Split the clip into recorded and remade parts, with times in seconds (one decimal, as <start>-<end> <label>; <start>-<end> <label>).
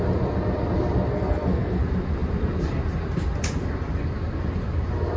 0.0-1.1 recorded; 1.1-1.8 remade; 1.8-5.2 recorded